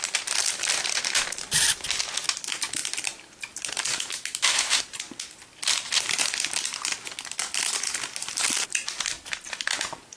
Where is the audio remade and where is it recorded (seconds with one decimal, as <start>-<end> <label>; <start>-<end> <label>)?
0.0-3.9 recorded; 3.9-4.8 remade; 4.8-10.2 recorded